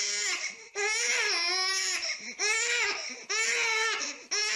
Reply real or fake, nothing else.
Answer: real